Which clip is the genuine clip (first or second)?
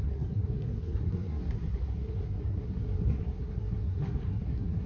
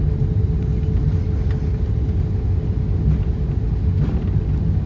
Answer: second